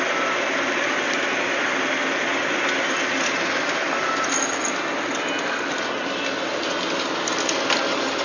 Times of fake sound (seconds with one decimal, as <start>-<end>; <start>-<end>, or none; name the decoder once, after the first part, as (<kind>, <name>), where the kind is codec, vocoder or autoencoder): none

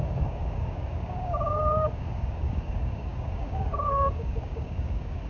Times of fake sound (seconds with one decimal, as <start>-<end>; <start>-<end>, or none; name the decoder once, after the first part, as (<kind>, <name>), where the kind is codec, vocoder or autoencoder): 0.0-5.3 (codec, DAC)

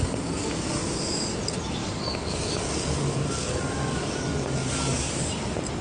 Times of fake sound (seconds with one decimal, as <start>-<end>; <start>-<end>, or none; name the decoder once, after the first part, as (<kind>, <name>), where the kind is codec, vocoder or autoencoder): 1.8-5.3 (codec, DAC)

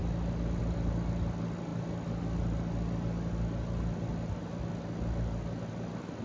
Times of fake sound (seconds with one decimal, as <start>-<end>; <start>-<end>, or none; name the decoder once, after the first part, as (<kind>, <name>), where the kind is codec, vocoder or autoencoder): none

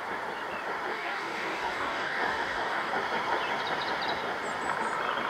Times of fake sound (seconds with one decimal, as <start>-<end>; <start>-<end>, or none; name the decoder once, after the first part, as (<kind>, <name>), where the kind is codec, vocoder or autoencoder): 0.9-2.9 (codec, DAC)

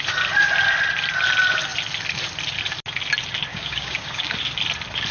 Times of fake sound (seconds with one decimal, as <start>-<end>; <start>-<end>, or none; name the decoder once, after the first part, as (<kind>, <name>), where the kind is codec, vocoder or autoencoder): 3.5-4.3 (codec, DAC)

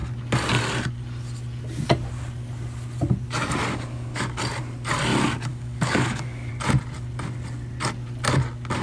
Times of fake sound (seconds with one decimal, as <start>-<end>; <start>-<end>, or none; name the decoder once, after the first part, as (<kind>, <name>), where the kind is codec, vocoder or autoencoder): 3.6-4.4 (codec, DAC); 5.5-6.5